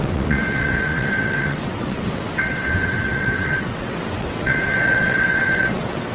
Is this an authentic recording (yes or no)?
no